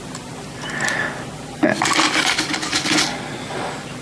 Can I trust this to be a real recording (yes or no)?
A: yes